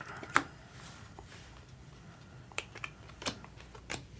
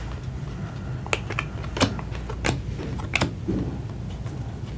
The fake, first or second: first